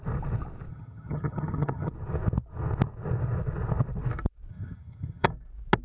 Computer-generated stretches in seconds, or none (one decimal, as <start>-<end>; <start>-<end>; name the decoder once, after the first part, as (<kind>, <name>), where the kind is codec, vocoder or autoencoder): 0.7-1.9 (vocoder, HiFi-GAN); 4.5-5.3